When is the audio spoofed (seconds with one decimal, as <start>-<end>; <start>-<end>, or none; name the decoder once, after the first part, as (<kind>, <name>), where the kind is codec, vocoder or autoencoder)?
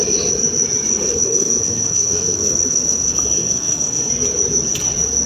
0.9-4.1 (codec, SNAC)